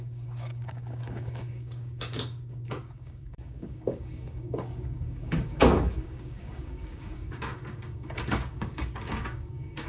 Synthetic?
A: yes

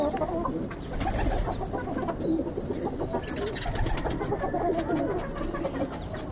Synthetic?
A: no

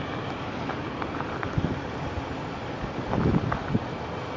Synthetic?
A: no